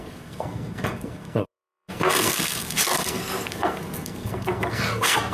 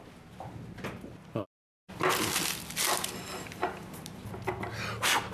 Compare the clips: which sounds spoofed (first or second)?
first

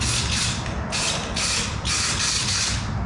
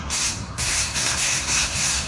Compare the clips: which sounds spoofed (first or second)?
second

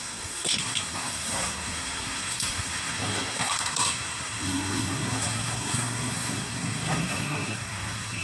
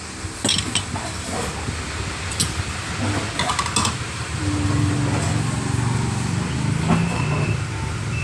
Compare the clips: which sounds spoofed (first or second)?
first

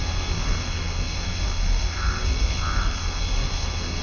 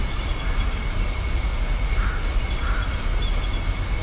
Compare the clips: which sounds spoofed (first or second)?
first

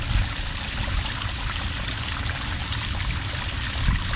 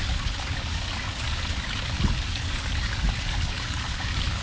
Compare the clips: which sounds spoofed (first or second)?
second